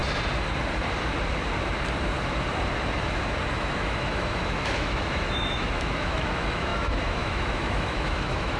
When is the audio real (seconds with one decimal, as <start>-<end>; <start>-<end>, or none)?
0.0-3.5